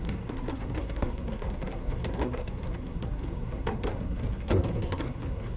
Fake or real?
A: fake